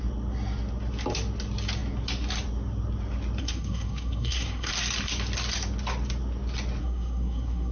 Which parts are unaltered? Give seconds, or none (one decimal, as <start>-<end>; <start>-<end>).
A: 0.0-3.4; 4.7-6.8